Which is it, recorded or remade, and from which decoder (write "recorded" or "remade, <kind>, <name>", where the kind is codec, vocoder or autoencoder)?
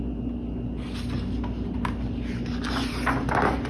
recorded